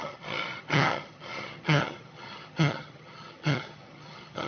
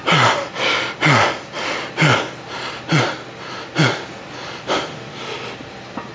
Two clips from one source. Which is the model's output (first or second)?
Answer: first